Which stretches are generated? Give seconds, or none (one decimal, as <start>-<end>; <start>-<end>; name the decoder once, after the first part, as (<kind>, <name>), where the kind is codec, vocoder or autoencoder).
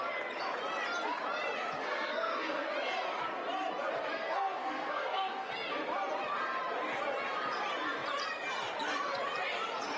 1.8-2.7 (codec, SNAC); 4.1-5.5